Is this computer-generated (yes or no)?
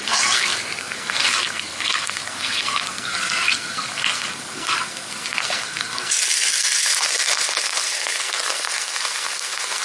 yes